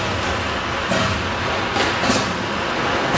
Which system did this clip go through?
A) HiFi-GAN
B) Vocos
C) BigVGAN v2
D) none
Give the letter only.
D